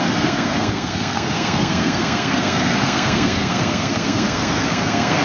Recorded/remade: remade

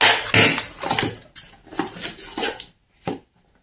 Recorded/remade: recorded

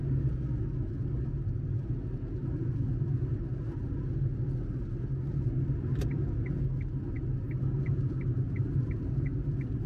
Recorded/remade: recorded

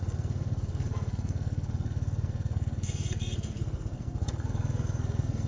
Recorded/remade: remade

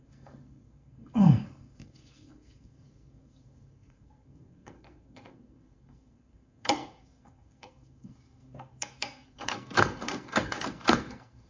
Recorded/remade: remade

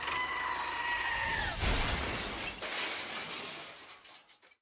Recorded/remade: recorded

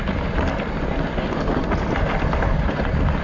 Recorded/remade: recorded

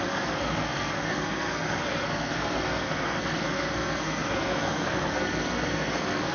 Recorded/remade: remade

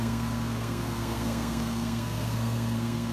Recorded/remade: remade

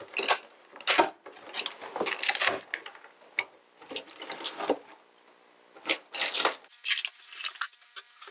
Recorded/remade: recorded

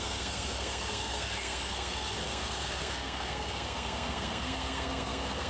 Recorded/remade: remade